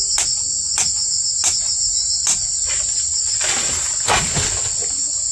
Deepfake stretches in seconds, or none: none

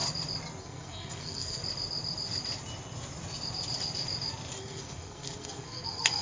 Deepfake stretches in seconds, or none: 0.6-1.6; 4.6-6.2